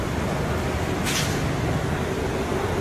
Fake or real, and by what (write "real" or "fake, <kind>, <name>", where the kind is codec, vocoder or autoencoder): real